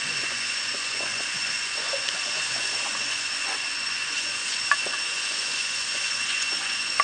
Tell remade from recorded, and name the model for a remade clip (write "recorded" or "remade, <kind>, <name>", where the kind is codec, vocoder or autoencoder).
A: remade, vocoder, Vocos